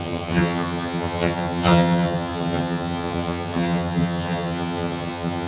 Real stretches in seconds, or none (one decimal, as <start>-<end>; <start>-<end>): none